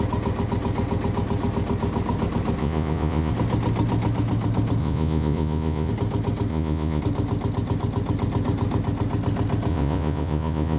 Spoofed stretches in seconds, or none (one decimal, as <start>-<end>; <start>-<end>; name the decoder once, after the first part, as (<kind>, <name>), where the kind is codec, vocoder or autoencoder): 2.6-3.3 (vocoder, Vocos); 4.8-5.9; 6.5-7.0; 9.7-10.8